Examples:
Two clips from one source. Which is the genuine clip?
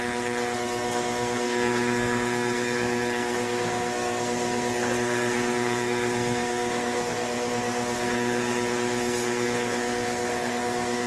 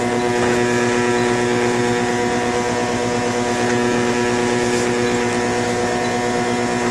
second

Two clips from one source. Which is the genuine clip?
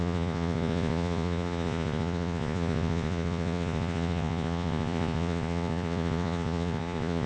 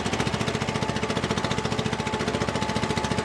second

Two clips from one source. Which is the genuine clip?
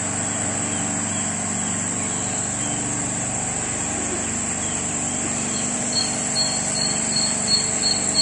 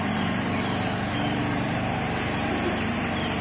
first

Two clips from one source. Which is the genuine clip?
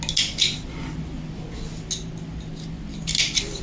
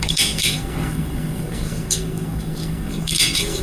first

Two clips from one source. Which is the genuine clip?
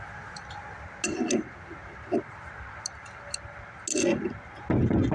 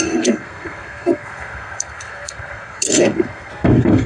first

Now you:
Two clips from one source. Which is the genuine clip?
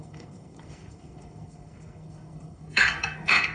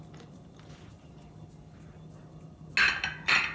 second